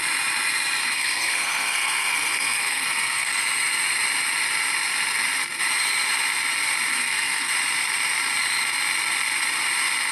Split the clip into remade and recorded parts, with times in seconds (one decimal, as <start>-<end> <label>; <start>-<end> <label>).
0.0-0.8 recorded; 0.8-3.4 remade; 3.4-6.9 recorded; 6.9-7.5 remade; 7.5-10.1 recorded